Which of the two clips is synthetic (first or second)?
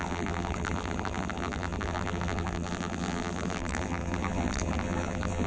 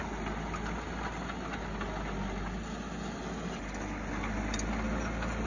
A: first